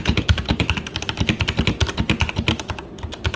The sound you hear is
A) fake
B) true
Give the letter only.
B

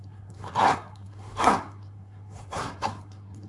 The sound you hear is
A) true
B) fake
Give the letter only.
B